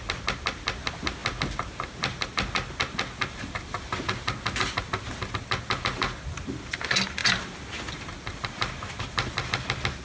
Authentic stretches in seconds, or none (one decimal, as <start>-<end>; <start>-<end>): 0.0-7.2; 9.6-10.0